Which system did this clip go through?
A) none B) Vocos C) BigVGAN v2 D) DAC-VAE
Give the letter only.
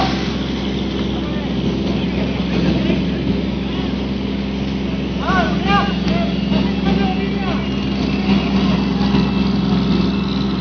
A